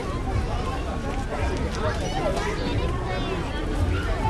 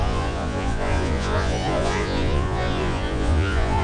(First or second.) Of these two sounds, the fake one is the second